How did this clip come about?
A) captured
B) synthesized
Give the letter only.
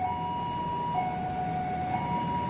A